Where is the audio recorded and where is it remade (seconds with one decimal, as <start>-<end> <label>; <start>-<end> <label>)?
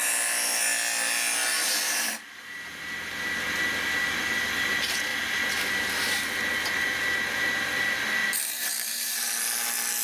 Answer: 0.0-1.5 recorded; 1.5-2.8 remade; 2.8-8.2 recorded; 8.2-9.3 remade; 9.3-10.0 recorded